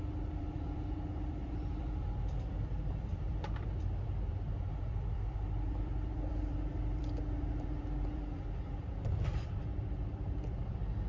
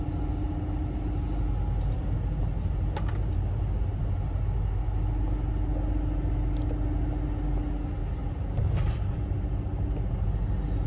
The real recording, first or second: second